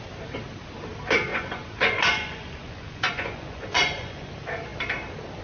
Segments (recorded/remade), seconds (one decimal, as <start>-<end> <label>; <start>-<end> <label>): 0.0-1.3 recorded; 1.3-4.3 remade; 4.3-5.4 recorded